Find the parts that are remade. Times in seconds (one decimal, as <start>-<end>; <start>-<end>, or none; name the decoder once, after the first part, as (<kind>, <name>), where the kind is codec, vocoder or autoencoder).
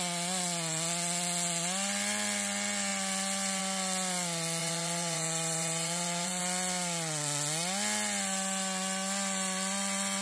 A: 4.6-6.4 (vocoder, Vocos)